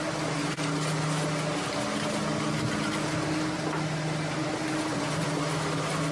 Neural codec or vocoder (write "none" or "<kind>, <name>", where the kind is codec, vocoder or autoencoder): none